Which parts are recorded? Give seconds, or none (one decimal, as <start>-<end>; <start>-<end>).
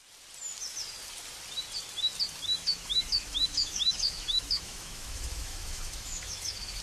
0.0-2.5